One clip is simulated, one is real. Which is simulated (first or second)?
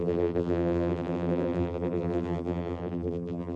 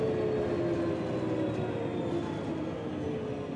first